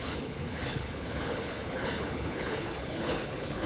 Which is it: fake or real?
fake